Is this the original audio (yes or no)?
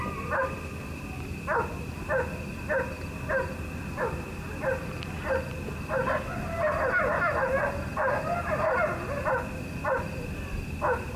yes